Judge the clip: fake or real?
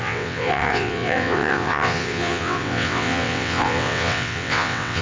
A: fake